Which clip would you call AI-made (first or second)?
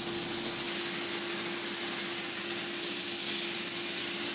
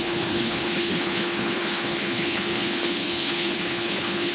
second